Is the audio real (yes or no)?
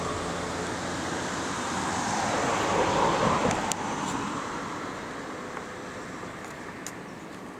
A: yes